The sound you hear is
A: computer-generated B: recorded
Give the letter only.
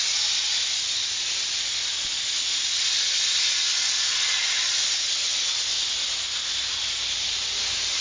B